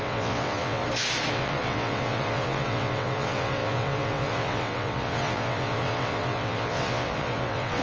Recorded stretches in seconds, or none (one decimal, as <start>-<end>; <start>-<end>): 0.8-1.3